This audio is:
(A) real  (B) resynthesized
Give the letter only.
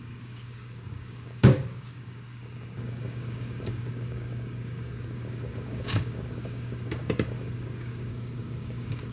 B